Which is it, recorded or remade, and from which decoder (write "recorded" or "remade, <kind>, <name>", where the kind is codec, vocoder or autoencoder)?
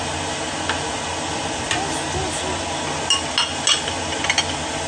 recorded